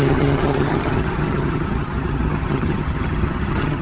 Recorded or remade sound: remade